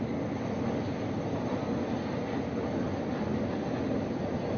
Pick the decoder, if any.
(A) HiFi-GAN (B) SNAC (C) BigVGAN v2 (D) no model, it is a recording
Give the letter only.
D